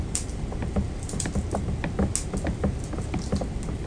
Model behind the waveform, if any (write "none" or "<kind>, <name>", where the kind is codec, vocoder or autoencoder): none